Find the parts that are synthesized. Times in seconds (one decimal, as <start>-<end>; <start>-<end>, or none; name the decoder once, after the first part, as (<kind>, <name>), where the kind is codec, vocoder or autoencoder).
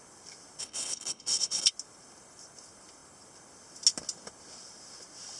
0.6-1.7 (codec, HILCodec)